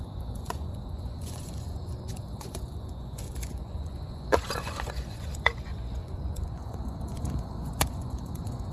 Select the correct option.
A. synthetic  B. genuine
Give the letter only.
A